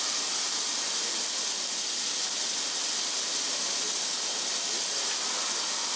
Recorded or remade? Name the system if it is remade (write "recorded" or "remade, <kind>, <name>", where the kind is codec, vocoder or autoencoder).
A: recorded